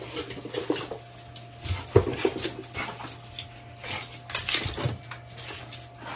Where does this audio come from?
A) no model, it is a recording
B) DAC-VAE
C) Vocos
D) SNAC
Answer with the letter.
A